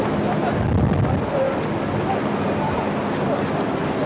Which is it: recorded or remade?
recorded